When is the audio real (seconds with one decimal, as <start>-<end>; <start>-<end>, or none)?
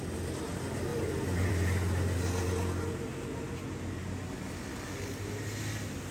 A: 0.0-6.1